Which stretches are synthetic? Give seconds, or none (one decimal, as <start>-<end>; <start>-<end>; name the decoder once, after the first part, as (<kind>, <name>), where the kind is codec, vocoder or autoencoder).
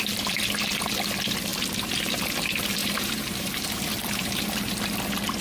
1.5-2.0 (vocoder, BigVGAN v2); 2.8-4.4